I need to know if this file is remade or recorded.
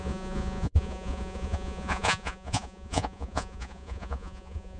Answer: remade